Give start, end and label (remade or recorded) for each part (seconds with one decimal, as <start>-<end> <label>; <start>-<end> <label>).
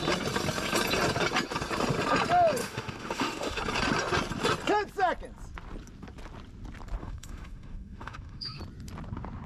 0.0-2.6 recorded; 2.6-3.6 remade; 3.6-7.0 recorded; 7.0-8.6 remade; 8.6-9.5 recorded